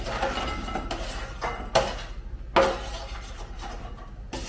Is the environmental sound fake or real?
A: real